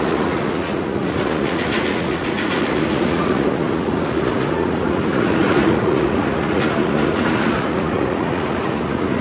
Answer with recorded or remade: remade